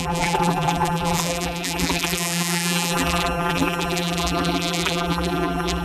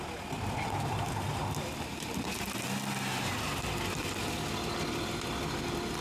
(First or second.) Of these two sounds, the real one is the second